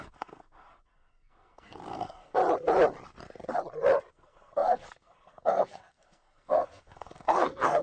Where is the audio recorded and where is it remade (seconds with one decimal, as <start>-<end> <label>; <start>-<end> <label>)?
0.0-2.4 remade; 2.4-4.1 recorded; 4.1-7.8 remade